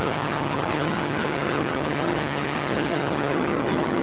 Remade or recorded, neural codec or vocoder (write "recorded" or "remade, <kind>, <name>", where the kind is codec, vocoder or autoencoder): remade, vocoder, HiFi-GAN